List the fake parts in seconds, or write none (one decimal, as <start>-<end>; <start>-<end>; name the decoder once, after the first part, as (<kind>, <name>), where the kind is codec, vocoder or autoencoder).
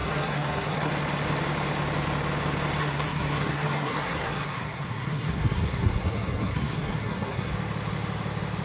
0.0-0.9 (codec, SNAC); 2.8-7.5